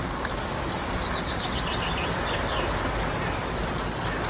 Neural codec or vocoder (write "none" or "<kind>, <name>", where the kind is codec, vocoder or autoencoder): none